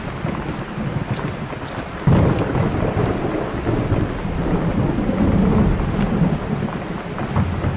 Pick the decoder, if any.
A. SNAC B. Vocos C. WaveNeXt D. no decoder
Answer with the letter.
D